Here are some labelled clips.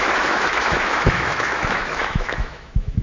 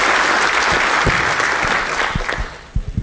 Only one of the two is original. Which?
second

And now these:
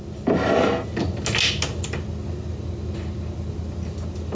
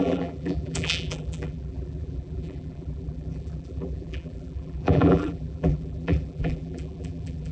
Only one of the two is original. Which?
first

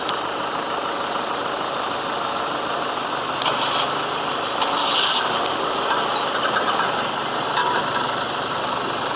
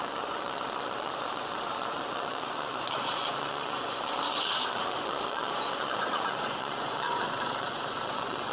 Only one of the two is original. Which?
first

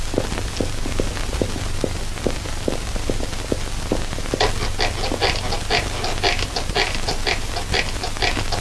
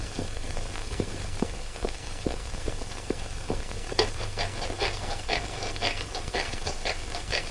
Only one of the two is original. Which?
first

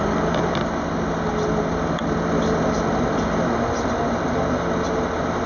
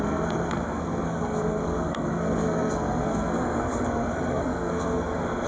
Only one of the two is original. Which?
first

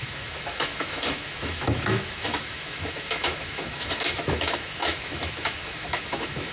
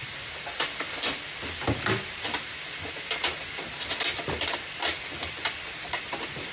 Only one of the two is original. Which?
second